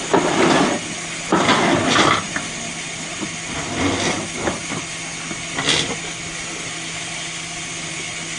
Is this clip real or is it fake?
real